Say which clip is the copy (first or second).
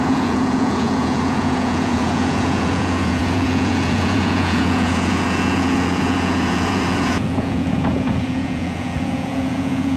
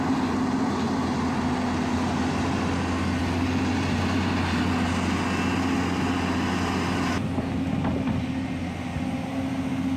first